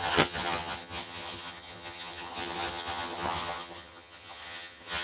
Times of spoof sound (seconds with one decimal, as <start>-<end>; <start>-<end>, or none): 0.0-5.0

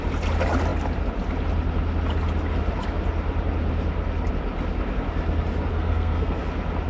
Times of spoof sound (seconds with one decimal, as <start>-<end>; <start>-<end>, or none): 5.7-6.4